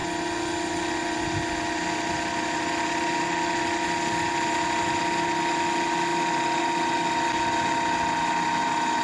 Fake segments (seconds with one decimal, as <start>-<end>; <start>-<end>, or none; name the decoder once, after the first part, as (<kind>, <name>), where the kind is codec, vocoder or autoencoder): none